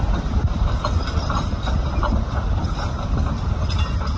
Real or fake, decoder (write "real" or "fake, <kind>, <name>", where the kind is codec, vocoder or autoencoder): real